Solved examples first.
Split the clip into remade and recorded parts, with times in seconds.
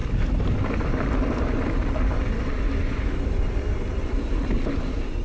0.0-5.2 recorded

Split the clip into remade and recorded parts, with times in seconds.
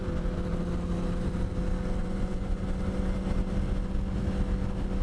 0.0-2.0 recorded; 2.0-2.6 remade; 2.6-5.0 recorded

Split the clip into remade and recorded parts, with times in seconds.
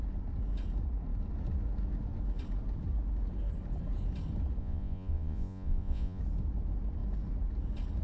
0.0-4.6 recorded; 4.6-6.2 remade; 6.2-8.0 recorded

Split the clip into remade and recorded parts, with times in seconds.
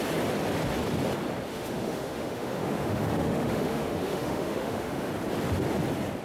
0.0-1.5 recorded; 1.5-5.1 remade; 5.1-6.2 recorded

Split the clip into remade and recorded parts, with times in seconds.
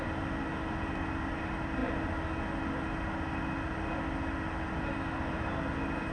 0.0-6.1 recorded